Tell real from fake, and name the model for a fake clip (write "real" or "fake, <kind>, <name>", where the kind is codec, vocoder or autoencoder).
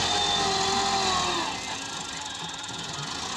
real